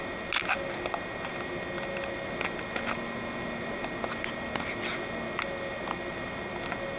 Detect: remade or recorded recorded